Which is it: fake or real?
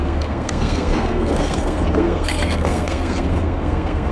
fake